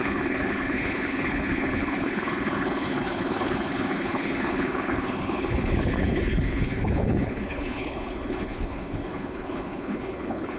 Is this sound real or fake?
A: fake